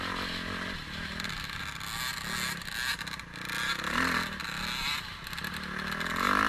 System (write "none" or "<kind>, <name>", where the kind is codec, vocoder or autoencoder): none